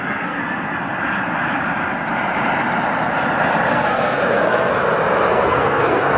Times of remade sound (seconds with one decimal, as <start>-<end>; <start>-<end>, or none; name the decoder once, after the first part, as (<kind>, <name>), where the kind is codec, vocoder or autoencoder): 0.0-0.4 (codec, SNAC); 3.7-4.7; 5.3-6.2